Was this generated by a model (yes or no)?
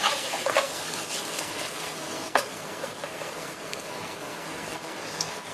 yes